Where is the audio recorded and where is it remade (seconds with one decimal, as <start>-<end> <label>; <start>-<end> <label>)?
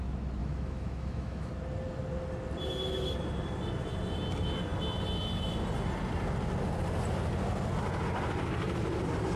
0.0-0.4 recorded; 0.4-1.5 remade; 1.5-9.4 recorded